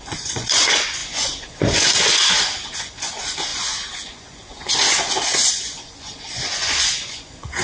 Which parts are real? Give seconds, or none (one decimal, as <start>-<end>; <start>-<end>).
none